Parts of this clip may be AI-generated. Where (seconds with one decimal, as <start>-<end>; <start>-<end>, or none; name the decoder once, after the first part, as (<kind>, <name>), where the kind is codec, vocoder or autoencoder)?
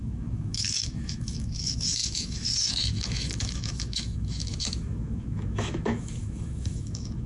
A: 0.0-7.3 (autoencoder, DAC-VAE)